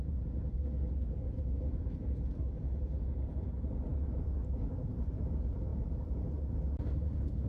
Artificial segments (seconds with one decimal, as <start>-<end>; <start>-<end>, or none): 0.0-7.5